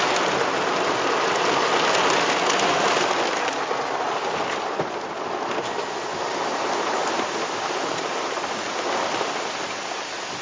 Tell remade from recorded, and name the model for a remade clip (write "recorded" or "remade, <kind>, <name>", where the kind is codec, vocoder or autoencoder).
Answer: recorded